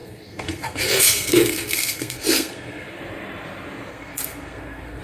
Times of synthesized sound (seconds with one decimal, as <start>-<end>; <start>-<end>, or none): 0.0-3.0; 3.9-5.0